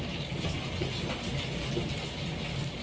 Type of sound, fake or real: real